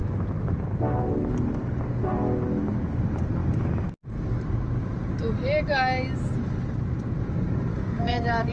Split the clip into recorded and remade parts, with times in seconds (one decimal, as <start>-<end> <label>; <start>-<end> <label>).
0.0-7.7 recorded; 7.7-8.5 remade